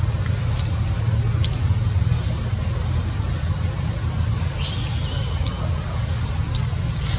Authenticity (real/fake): real